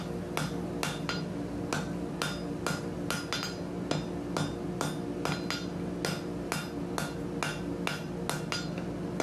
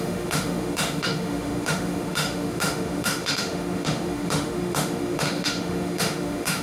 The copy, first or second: second